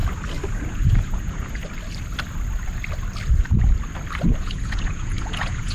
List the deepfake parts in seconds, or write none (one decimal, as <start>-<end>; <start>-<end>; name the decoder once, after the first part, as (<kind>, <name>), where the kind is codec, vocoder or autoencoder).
0.5-1.6 (vocoder, Vocos); 4.4-5.7